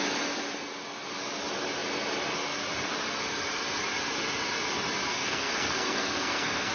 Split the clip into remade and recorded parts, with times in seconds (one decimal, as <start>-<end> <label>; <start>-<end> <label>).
0.0-5.1 recorded; 5.1-6.7 remade